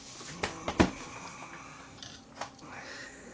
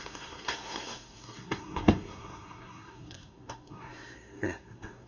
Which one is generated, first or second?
second